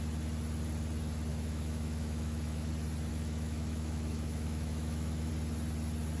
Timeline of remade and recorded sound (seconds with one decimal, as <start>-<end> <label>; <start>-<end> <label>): 0.0-1.3 recorded; 1.3-2.7 remade; 2.7-3.1 recorded; 3.1-5.3 remade; 5.3-6.2 recorded